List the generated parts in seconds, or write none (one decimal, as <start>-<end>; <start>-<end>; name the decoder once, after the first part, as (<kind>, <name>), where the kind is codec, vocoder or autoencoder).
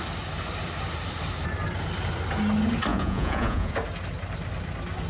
2.9-3.7 (vocoder, Vocos)